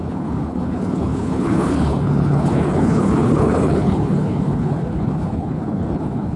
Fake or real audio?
fake